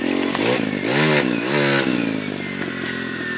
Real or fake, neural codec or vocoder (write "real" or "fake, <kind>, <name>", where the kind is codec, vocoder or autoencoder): real